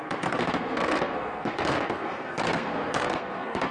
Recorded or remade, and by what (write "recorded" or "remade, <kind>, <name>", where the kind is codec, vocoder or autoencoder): remade, codec, SNAC